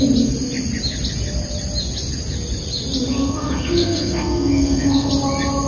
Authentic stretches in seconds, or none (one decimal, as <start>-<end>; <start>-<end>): 0.0-3.1; 5.1-5.7

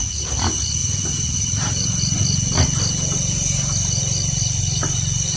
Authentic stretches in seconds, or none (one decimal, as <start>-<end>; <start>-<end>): 0.0-5.4

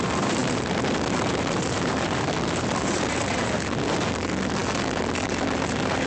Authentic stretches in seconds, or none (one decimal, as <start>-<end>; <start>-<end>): none

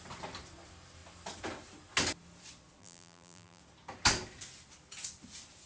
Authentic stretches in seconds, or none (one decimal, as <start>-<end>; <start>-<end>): 0.0-2.8; 3.6-5.7

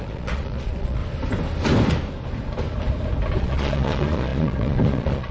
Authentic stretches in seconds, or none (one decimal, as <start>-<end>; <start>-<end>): 1.0-3.4

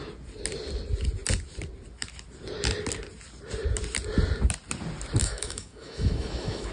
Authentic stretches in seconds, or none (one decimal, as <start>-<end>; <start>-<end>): 0.0-5.2

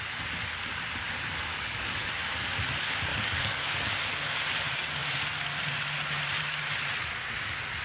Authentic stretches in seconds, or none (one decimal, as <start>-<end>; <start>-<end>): 0.0-1.5; 2.1-3.1; 3.7-7.8

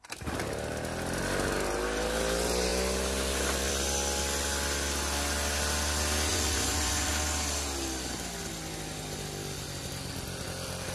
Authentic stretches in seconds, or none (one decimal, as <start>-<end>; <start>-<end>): 0.0-6.3; 7.1-10.9